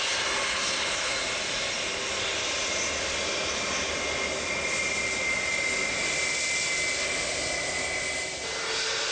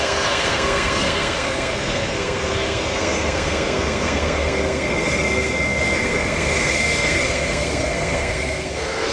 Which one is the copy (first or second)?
second